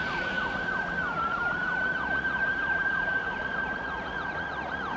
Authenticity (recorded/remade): remade